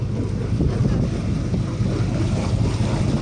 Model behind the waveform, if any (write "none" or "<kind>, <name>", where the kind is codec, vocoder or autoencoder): none